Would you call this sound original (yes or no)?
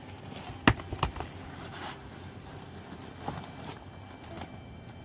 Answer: yes